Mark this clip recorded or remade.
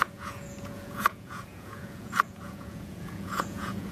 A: remade